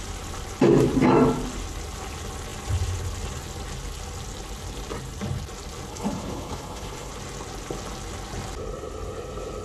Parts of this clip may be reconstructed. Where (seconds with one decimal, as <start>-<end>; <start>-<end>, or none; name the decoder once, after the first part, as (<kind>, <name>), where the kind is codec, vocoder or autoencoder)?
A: 5.9-7.1 (codec, HILCodec)